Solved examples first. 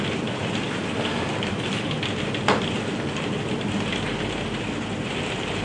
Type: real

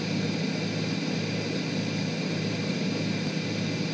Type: real